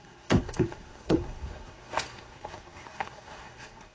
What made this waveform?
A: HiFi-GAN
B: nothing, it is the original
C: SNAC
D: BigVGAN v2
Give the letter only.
C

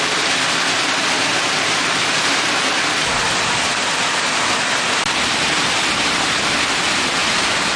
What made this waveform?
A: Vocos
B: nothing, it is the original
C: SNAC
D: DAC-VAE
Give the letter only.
B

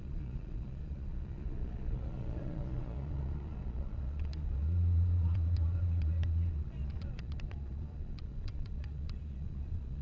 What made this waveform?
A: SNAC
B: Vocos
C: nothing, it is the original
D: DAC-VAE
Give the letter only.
B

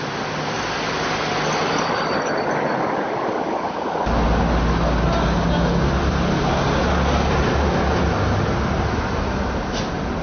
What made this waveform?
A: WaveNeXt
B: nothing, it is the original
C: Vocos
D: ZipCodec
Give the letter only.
B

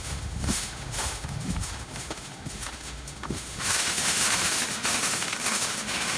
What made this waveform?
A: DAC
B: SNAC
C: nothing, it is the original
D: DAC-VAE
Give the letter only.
D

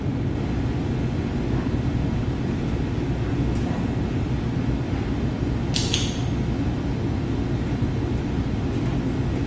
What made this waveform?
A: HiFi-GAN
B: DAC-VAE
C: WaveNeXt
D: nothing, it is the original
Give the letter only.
D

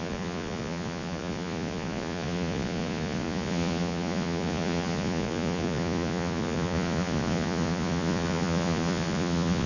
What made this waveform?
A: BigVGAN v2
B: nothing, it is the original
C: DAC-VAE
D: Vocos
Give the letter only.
D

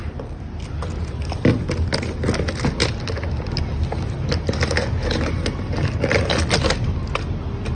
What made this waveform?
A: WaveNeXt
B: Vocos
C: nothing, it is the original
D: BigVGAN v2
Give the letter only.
C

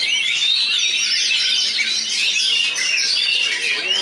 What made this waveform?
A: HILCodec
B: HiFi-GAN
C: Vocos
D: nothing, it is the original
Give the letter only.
D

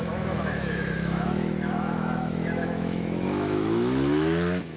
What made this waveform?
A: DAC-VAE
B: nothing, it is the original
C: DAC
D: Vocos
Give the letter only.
A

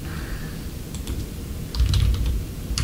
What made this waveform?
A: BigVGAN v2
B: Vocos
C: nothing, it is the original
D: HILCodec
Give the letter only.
A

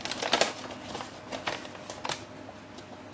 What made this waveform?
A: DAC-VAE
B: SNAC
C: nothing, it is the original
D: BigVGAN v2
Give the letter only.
C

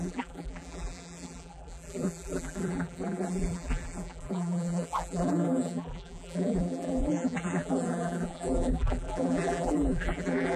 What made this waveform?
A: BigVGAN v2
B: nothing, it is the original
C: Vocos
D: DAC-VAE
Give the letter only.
A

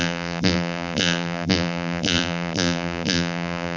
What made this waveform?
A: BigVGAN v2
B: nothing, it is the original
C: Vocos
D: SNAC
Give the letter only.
A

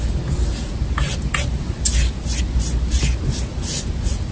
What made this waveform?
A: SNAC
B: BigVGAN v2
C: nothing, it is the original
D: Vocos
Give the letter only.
C